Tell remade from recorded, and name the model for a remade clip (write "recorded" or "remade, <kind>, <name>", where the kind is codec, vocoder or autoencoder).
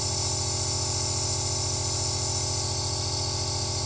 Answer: recorded